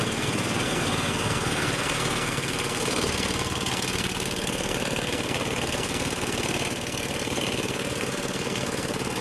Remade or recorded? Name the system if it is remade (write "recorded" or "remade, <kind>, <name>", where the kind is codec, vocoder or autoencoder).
remade, codec, SNAC